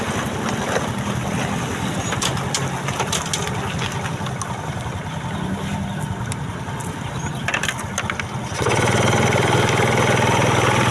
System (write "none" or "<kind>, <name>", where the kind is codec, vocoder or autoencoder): none